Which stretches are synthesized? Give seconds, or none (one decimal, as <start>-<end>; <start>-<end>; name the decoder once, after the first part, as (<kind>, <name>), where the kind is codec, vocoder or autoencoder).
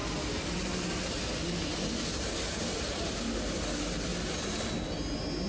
none